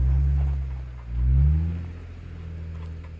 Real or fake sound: real